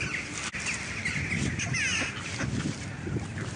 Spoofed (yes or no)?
no